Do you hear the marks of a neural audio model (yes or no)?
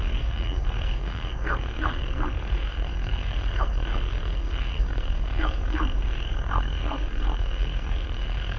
yes